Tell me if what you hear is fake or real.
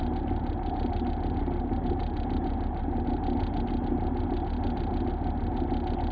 real